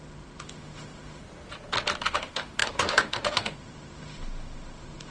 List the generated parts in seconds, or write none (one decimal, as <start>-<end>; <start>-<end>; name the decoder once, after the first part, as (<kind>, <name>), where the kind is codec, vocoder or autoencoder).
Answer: 0.0-1.2 (autoencoder, DAC-VAE); 2.1-5.1